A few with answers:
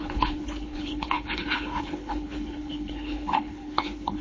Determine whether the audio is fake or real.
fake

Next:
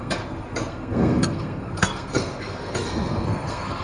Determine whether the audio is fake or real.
fake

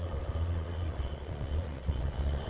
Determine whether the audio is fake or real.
fake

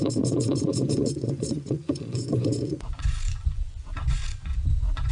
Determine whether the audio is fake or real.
fake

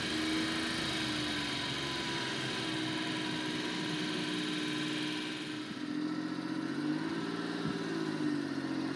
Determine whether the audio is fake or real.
real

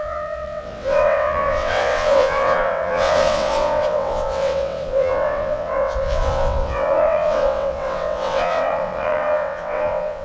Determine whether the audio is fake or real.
fake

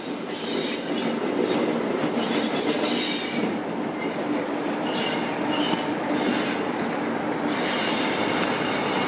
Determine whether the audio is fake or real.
real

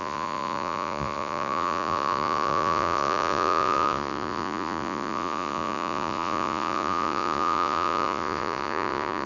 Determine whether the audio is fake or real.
fake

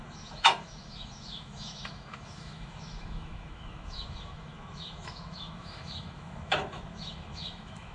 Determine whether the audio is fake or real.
fake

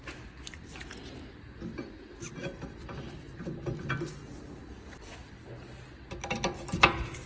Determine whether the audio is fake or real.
real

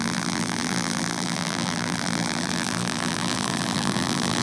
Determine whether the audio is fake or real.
fake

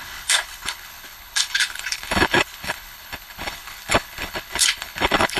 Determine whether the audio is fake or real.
fake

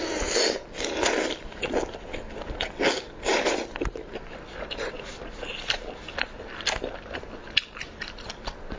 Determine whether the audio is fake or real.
real